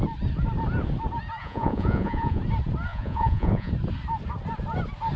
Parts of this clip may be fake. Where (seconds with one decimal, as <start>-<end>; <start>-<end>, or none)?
1.4-2.4; 2.9-3.7